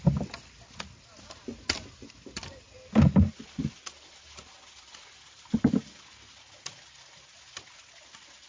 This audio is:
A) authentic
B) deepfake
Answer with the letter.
A